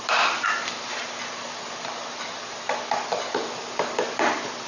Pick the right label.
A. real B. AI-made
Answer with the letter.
A